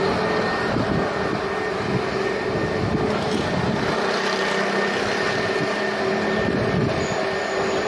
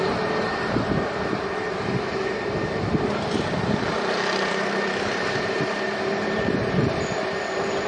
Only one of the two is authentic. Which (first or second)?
first